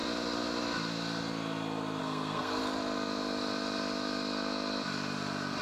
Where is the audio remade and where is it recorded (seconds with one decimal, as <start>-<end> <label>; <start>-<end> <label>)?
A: 0.0-2.0 recorded; 2.0-2.6 remade; 2.6-5.6 recorded